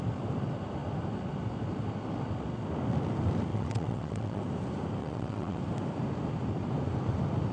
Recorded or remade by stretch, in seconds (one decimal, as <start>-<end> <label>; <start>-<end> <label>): 0.0-3.5 recorded; 3.5-4.4 remade; 4.4-5.0 recorded; 5.0-5.6 remade; 5.6-7.5 recorded